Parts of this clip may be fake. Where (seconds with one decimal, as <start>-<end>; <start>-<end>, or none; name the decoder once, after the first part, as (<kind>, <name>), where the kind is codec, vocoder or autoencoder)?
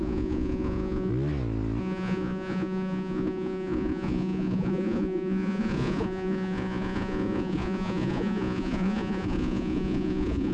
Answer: 0.0-1.1 (vocoder, Vocos); 1.8-10.5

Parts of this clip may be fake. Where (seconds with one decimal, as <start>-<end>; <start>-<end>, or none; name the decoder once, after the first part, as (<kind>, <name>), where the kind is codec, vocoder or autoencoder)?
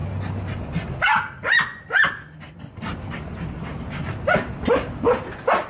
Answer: none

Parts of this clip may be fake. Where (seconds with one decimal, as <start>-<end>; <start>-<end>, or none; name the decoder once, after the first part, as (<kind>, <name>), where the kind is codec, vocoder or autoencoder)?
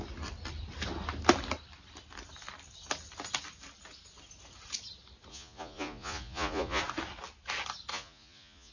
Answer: 5.3-6.8 (vocoder, Vocos); 7.9-8.7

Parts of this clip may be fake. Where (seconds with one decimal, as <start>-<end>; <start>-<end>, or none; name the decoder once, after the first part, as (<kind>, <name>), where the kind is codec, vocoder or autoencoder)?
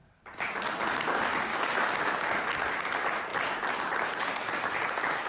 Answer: 1.5-2.3 (codec, DAC)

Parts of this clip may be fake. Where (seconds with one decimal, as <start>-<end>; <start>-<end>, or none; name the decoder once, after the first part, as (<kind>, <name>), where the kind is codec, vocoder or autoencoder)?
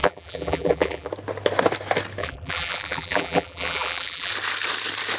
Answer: 0.0-1.1 (vocoder, BigVGAN v2); 2.2-4.3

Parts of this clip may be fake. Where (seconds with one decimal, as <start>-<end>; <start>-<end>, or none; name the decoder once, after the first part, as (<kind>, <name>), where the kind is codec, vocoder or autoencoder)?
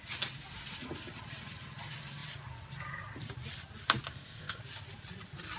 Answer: 4.1-4.6 (codec, ZipCodec)